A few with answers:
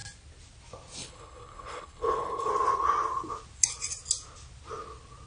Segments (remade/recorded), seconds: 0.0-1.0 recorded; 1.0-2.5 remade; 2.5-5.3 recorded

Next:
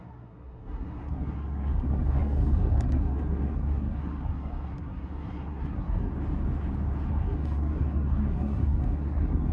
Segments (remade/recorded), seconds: 0.0-6.1 remade; 6.1-7.1 recorded; 7.1-9.5 remade

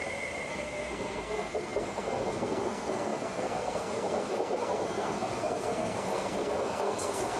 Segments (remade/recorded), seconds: 0.0-0.5 recorded; 0.5-7.4 remade

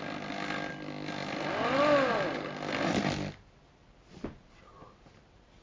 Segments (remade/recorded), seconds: 0.0-5.6 recorded

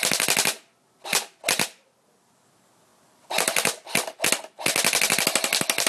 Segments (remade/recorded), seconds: 0.0-5.9 recorded

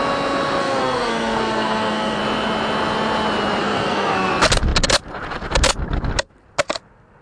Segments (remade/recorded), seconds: 0.0-0.6 recorded; 0.6-2.2 remade; 2.2-3.6 recorded; 3.6-4.3 remade; 4.3-7.2 recorded

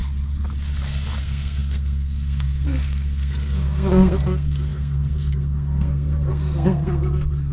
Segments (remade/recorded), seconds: 0.0-1.2 recorded; 1.2-7.5 remade

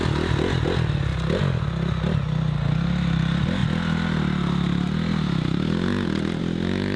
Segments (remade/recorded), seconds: 0.0-7.0 recorded